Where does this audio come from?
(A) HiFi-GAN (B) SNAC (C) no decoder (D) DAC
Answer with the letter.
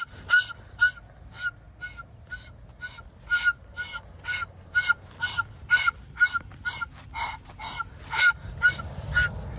C